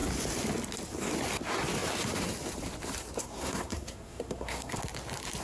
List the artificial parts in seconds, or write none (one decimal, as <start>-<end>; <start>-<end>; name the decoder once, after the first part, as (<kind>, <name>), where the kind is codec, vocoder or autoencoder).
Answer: 3.2-4.8 (codec, SNAC)